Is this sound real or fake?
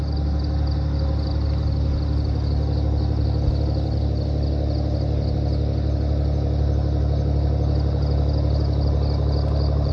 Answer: real